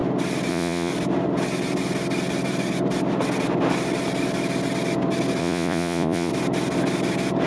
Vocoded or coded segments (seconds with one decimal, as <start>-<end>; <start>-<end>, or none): 0.5-0.9; 5.4-6.3